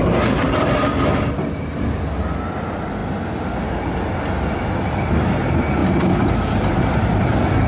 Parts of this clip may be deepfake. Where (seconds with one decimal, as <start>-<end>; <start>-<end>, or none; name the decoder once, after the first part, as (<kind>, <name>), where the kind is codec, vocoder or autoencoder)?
none